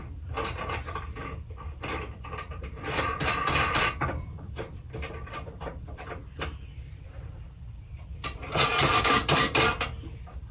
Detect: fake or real fake